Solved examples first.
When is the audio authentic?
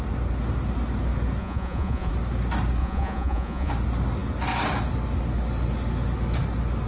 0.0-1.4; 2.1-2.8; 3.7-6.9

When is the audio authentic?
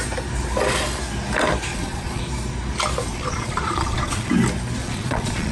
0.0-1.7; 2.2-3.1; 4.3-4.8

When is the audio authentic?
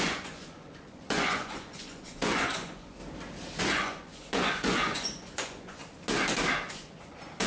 3.0-3.6; 5.8-6.7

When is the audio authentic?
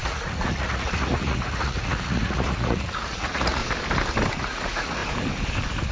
3.6-4.4; 5.0-5.9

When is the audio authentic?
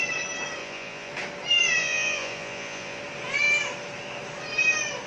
0.0-0.6; 1.1-1.8; 3.0-5.1